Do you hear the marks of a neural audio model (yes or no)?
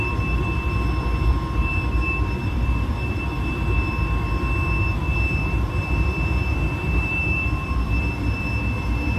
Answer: yes